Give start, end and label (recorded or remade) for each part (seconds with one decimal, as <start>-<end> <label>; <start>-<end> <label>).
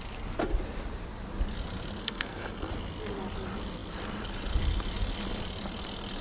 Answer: 0.0-2.0 recorded; 2.0-2.7 remade; 2.7-6.2 recorded